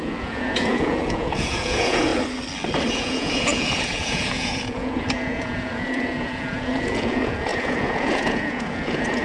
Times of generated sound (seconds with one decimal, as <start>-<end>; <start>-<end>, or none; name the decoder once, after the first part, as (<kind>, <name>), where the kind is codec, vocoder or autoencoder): 0.0-2.1 (vocoder, Vocos); 2.9-9.2